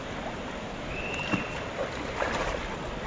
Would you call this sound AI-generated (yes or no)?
no